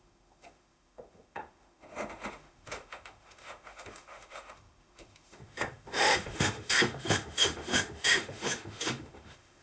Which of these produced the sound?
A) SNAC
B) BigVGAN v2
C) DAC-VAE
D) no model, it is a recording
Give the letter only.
C